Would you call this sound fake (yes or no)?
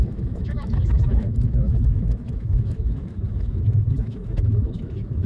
yes